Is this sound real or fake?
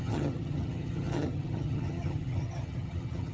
fake